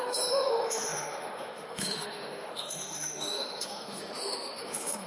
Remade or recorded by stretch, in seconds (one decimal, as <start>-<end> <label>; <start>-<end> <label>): 0.0-5.1 remade